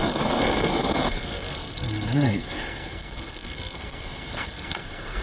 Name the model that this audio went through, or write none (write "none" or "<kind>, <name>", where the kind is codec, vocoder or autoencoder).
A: codec, SNAC